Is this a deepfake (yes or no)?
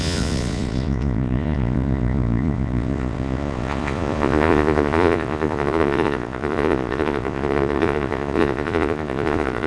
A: yes